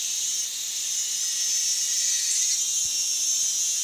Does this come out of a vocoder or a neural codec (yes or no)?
no